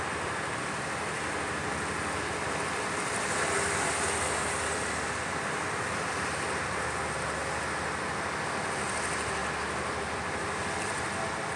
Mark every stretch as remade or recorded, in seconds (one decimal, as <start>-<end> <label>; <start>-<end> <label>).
0.0-9.4 recorded; 9.4-11.2 remade; 11.2-11.6 recorded